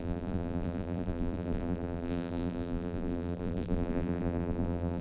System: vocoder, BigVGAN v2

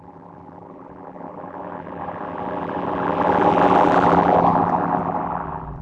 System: vocoder, BigVGAN v2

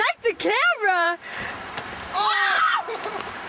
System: vocoder, BigVGAN v2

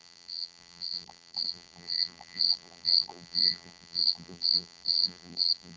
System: vocoder, BigVGAN v2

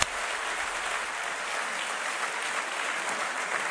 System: none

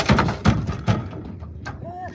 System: vocoder, BigVGAN v2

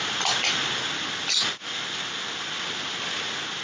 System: none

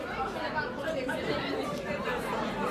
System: vocoder, BigVGAN v2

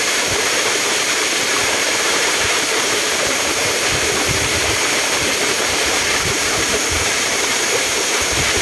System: vocoder, BigVGAN v2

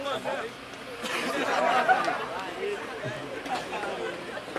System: none